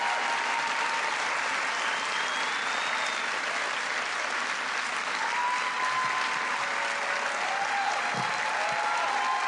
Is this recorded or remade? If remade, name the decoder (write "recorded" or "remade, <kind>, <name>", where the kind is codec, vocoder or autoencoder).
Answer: recorded